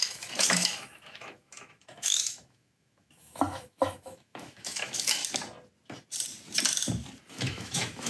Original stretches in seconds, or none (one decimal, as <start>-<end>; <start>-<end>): 5.2-7.3